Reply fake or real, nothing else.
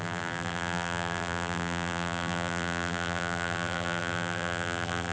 fake